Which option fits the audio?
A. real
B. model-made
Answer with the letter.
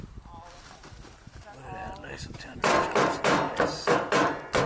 A